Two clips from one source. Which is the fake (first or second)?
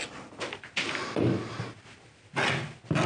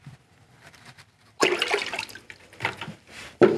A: second